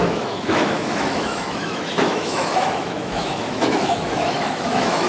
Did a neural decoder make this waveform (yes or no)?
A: yes